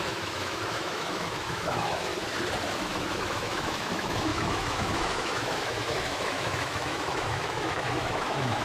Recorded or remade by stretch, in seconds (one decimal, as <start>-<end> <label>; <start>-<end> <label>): 0.0-2.1 remade; 2.1-2.8 recorded; 2.8-8.6 remade